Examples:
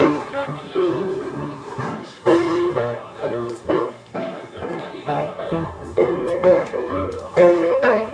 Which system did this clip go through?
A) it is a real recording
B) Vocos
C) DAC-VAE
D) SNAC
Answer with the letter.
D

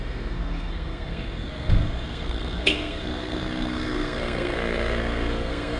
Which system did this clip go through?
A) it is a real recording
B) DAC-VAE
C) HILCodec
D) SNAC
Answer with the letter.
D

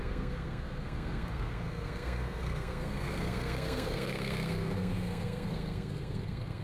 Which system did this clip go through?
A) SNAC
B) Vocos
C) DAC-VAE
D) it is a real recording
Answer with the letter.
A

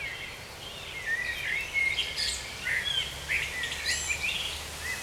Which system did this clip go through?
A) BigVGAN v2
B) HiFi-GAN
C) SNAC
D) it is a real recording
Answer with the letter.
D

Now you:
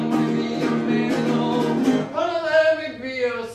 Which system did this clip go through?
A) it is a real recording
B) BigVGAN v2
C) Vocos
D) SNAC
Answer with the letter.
A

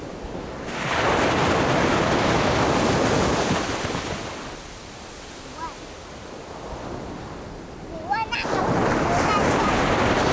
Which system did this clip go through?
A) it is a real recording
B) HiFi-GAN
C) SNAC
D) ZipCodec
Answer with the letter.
A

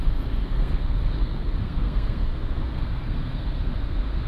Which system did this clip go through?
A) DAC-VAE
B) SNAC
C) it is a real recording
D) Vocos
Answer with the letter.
B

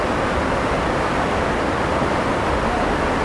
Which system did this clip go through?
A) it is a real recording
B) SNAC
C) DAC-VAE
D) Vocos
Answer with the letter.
A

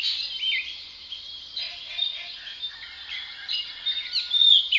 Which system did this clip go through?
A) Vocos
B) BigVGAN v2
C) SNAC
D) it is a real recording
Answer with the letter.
D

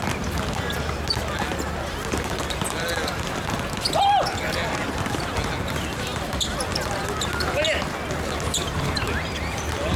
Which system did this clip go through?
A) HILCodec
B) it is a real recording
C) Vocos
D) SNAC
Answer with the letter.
B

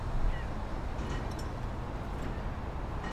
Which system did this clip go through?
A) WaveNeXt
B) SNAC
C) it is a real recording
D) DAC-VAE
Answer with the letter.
C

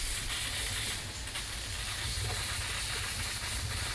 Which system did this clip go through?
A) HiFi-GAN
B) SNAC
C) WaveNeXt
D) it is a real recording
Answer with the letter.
D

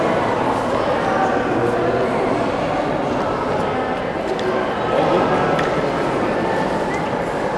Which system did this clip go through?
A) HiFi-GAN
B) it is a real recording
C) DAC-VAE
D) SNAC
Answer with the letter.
B